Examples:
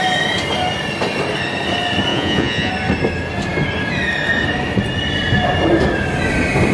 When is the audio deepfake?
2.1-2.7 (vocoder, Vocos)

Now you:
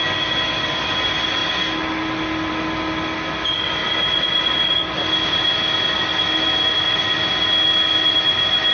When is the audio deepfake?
none

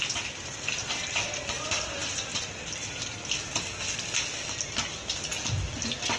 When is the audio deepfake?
none

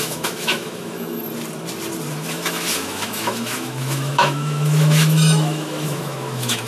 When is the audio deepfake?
0.0-1.2 (autoencoder, DAC-VAE); 2.1-6.7

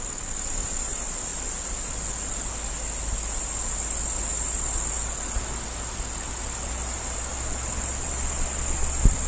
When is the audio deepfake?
none